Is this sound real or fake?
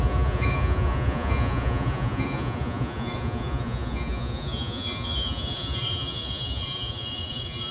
fake